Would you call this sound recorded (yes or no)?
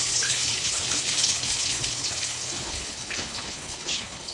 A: no